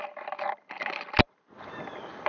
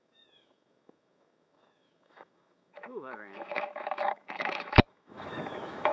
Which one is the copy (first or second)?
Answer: second